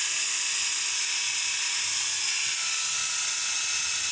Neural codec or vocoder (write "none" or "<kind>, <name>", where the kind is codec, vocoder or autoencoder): none